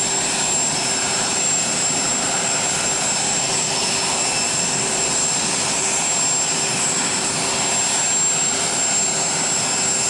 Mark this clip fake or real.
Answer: real